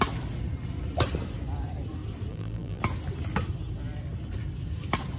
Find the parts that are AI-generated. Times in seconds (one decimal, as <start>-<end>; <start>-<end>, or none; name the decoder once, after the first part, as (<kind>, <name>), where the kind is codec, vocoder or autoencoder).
2.3-2.8 (vocoder, BigVGAN v2)